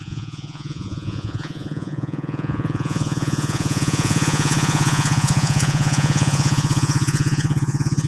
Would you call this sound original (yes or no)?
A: no